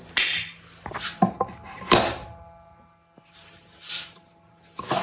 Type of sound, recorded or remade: recorded